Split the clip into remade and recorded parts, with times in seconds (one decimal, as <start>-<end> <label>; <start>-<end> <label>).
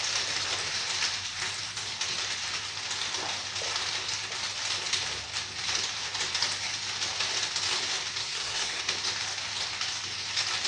0.0-8.2 recorded; 8.2-8.8 remade; 8.8-10.7 recorded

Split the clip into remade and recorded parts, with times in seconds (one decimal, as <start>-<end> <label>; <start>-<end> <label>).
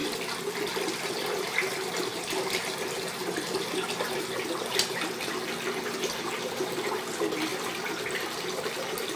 0.0-9.2 recorded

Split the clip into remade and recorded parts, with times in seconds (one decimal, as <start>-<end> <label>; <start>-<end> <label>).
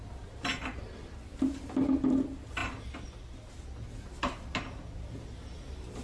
0.0-6.0 recorded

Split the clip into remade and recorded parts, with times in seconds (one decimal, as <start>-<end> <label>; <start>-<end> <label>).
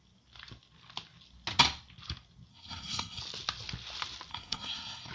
0.0-2.5 recorded; 2.5-3.2 remade; 3.2-4.3 recorded; 4.3-5.1 remade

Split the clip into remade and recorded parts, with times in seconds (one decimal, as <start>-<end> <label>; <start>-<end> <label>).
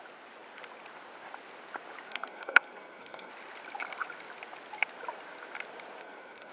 0.0-2.1 recorded; 2.1-3.3 remade; 3.3-6.0 recorded; 6.0-6.5 remade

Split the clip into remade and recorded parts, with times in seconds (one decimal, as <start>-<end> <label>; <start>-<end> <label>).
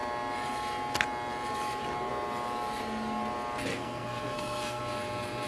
0.0-3.7 recorded; 3.7-4.8 remade; 4.8-5.5 recorded